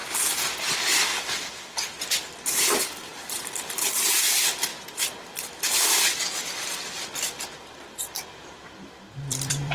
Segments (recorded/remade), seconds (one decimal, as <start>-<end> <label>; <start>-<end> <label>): 0.0-1.5 recorded; 1.5-3.1 remade; 3.1-4.3 recorded; 4.3-4.7 remade; 4.7-5.4 recorded; 5.4-9.7 remade